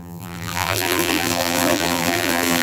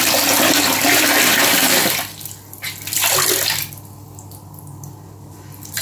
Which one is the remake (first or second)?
first